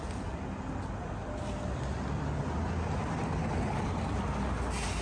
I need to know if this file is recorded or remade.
recorded